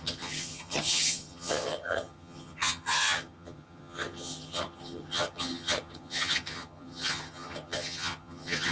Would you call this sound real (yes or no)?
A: no